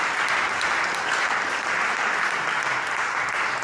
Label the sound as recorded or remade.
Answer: recorded